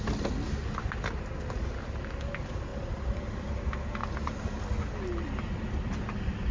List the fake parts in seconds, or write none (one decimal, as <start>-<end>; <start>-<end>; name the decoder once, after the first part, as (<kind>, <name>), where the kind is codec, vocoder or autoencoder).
2.7-3.6 (vocoder, BigVGAN v2); 4.0-6.1